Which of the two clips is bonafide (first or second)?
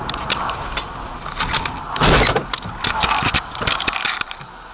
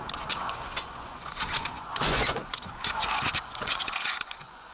first